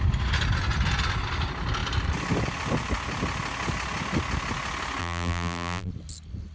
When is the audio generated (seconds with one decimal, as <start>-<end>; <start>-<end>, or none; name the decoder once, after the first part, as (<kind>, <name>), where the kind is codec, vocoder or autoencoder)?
5.0-5.9 (vocoder, BigVGAN v2)